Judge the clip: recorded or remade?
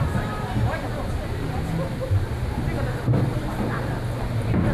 recorded